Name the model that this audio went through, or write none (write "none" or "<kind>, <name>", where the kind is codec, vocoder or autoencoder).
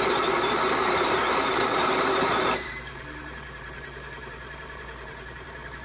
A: vocoder, BigVGAN v2